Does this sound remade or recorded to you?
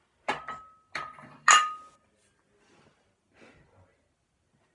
recorded